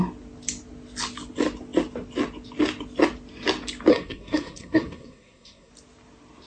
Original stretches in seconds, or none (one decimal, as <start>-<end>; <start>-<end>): 0.0-3.9; 5.7-6.5